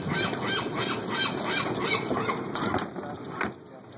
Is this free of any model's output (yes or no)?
yes